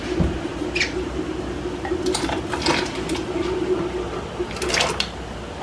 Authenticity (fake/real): real